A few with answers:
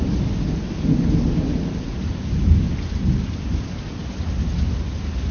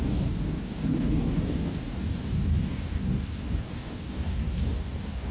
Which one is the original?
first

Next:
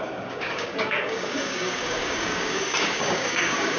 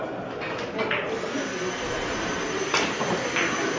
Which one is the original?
second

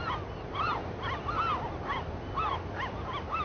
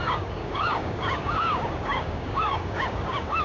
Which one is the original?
first